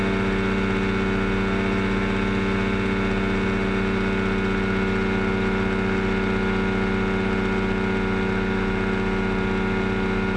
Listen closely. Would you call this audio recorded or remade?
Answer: recorded